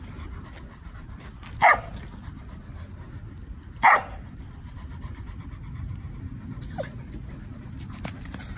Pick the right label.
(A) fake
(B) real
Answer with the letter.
B